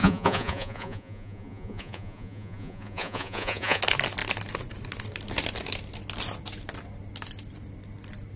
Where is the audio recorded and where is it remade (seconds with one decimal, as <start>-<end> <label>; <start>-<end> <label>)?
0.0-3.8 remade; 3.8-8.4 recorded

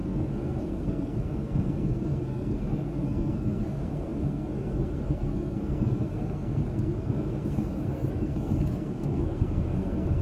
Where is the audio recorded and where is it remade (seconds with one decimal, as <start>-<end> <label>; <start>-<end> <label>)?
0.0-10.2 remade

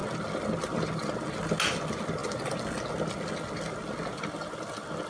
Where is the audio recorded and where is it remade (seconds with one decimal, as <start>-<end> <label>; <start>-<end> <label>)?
0.0-5.1 recorded

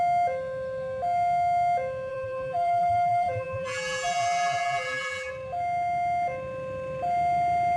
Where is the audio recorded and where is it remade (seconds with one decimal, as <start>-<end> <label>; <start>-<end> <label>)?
0.0-2.1 recorded; 2.1-5.3 remade; 5.3-7.8 recorded

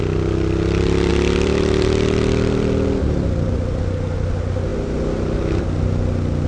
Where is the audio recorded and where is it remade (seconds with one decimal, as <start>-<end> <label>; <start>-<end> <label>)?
0.0-1.1 recorded; 1.1-3.8 remade; 3.8-6.5 recorded